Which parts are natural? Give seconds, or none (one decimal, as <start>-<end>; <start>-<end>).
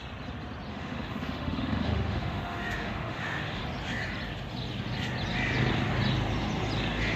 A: 0.0-0.7; 3.6-7.2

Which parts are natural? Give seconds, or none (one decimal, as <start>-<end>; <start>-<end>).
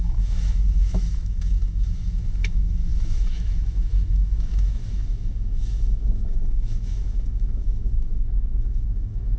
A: none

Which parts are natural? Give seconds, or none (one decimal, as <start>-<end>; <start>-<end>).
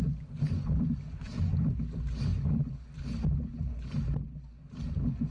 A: 0.0-5.3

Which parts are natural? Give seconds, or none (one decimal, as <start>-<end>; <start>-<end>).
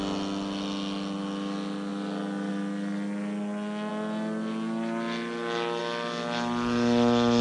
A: 0.0-7.4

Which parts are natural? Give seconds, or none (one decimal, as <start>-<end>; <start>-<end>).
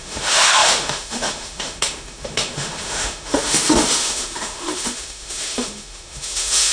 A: none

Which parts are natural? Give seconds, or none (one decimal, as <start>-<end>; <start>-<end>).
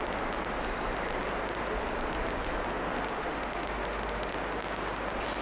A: 0.0-3.1; 4.3-5.4